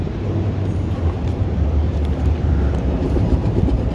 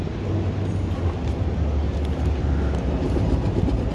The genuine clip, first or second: second